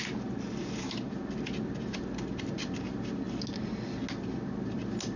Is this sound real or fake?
real